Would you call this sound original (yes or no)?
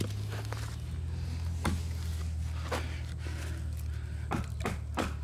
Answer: yes